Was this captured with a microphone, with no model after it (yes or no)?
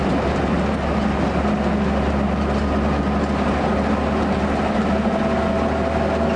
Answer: yes